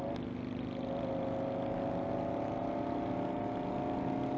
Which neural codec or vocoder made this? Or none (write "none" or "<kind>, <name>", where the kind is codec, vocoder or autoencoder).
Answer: none